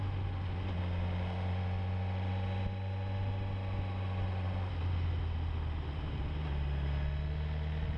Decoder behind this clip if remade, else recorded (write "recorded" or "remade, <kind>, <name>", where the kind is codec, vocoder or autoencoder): recorded